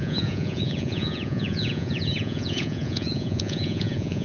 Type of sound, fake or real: fake